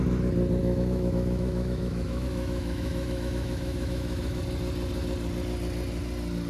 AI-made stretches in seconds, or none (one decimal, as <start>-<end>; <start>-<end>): 0.6-4.4